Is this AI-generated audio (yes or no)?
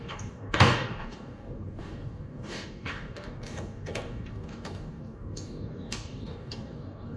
yes